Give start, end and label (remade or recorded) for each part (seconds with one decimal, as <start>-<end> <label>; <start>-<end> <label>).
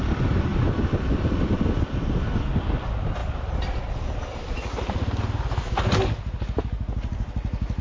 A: 0.0-7.8 recorded